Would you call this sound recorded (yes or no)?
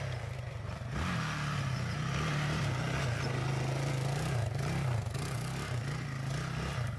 yes